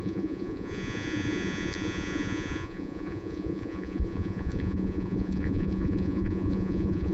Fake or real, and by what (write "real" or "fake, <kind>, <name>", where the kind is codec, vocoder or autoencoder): fake, vocoder, Vocos